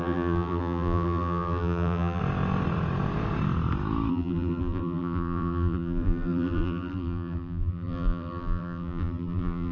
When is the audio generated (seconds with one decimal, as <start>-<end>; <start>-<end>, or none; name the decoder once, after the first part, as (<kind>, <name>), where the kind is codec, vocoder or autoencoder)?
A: 0.0-2.2 (vocoder, BigVGAN v2); 4.1-9.7